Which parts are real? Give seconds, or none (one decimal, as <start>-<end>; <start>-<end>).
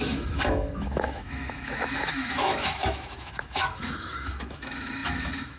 none